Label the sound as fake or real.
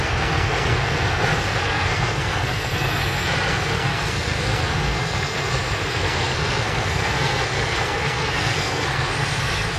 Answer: fake